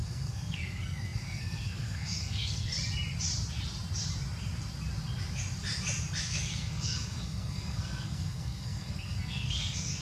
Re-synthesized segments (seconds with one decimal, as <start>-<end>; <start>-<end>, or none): 0.0-2.7; 6.2-10.0